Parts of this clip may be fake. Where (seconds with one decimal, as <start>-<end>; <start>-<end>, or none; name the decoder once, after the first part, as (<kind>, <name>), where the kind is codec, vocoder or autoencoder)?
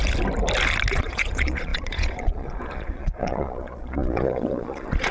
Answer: 0.9-5.1 (vocoder, Vocos)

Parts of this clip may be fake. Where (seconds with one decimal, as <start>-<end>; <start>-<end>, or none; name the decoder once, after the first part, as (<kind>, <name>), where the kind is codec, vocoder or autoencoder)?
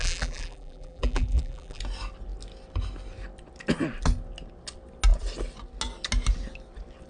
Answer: 0.0-1.8 (vocoder, BigVGAN v2)